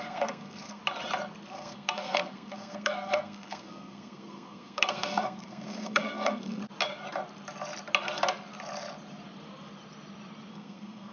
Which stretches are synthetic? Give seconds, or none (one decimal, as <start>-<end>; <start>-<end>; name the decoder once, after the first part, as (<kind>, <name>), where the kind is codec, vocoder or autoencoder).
0.0-0.8 (codec, SNAC); 1.5-6.6; 10.5-11.1